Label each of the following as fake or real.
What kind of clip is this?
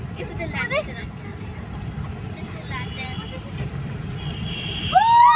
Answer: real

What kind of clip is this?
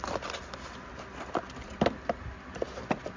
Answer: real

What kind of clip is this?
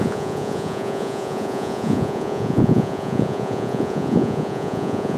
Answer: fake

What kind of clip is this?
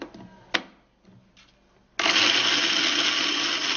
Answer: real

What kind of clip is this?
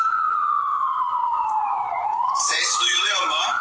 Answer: fake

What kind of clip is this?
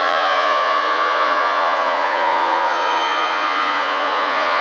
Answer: fake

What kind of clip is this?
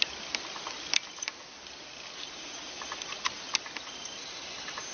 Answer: real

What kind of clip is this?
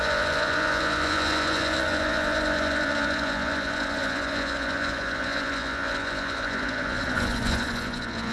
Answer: fake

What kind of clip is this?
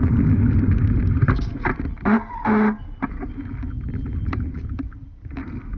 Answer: real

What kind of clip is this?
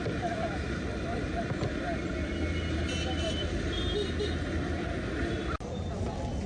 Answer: real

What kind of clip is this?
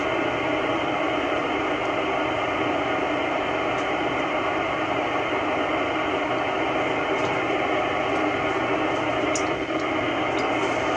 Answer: real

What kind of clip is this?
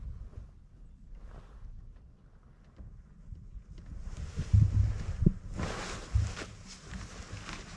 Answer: real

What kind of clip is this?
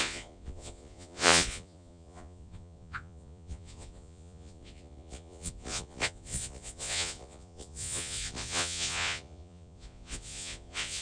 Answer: fake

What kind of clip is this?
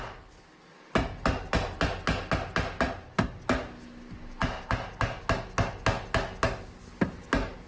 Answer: real